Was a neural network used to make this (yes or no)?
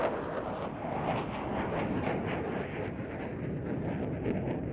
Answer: no